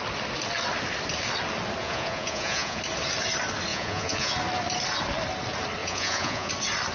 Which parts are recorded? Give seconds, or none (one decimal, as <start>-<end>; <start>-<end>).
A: 0.0-1.8; 2.8-3.7; 4.3-5.8; 6.5-6.9